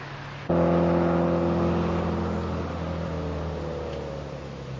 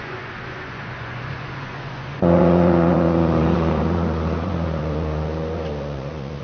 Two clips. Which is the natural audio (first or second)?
first